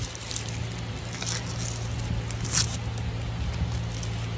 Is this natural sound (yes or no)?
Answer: yes